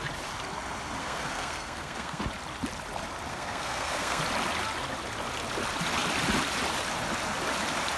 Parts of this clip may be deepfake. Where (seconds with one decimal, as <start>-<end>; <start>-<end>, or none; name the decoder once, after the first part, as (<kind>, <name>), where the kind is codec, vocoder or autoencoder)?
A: 1.0-2.2 (codec, SNAC); 3.3-4.2